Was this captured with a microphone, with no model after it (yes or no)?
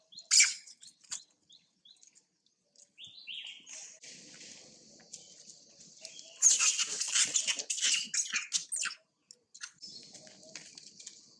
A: yes